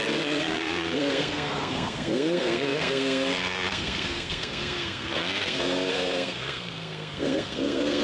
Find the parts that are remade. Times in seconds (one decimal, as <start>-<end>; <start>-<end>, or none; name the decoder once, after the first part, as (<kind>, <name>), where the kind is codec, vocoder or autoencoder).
0.0-8.0 (codec, SNAC)